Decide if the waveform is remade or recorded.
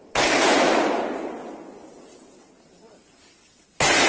recorded